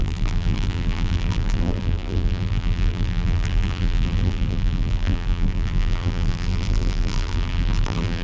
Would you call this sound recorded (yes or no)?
no